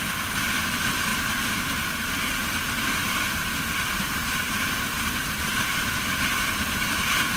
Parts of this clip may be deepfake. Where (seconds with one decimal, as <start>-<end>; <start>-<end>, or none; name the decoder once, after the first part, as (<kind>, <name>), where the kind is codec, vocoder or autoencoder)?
1.1-1.8 (vocoder, BigVGAN v2); 3.0-7.4

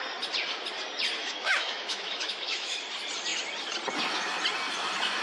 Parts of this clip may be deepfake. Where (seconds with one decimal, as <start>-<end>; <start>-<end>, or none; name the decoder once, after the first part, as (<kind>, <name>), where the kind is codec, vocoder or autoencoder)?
1.2-2.8 (autoencoder, DAC-VAE)